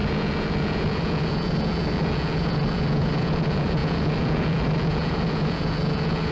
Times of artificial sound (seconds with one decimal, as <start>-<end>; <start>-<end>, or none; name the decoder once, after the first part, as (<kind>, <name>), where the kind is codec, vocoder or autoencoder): 0.0-6.3 (vocoder, Vocos)